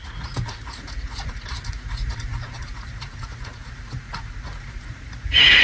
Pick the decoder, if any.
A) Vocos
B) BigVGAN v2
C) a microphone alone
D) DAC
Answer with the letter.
A